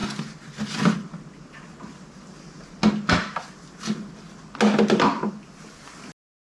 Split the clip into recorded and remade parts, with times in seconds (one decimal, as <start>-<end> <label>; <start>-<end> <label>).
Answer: 0.0-6.5 recorded